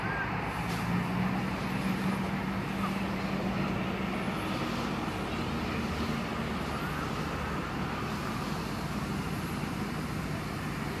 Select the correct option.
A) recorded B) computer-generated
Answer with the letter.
A